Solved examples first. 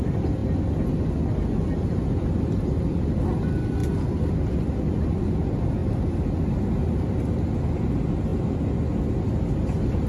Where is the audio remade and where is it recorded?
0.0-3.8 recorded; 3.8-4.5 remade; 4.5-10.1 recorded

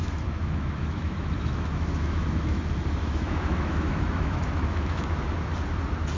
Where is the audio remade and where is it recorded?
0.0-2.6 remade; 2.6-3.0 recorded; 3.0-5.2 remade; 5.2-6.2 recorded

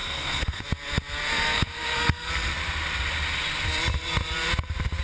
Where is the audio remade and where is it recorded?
0.0-0.6 remade; 0.6-1.2 recorded; 1.2-2.3 remade; 2.3-5.0 recorded

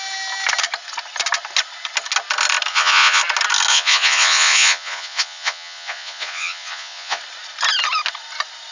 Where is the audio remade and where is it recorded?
0.0-2.7 recorded; 2.7-3.2 remade; 3.2-3.7 recorded; 3.7-7.2 remade; 7.2-8.7 recorded